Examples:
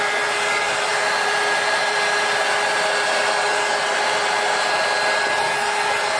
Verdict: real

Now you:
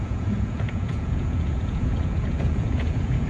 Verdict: fake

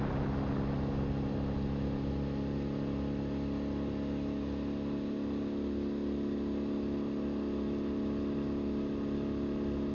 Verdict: real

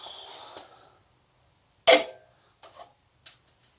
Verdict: real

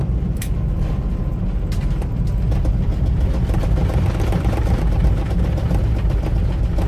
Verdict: real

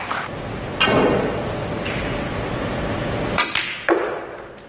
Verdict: real